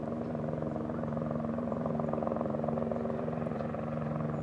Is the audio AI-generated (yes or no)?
yes